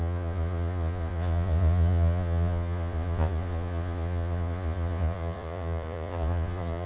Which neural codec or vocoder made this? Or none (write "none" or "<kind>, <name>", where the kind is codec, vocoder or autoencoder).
vocoder, Vocos